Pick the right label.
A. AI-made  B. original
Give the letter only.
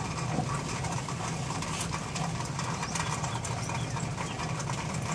A